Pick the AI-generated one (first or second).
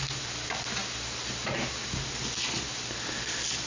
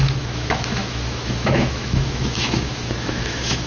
second